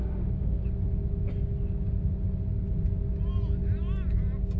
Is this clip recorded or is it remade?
recorded